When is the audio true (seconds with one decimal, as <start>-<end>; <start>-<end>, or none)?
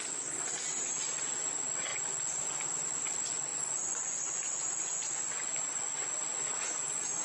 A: 0.0-1.9; 2.4-3.5; 5.2-7.2